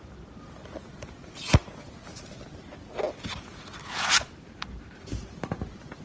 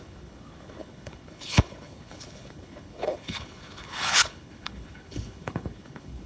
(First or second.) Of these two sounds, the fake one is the second